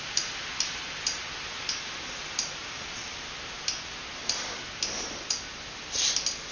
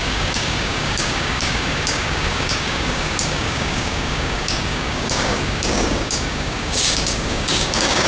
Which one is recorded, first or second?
first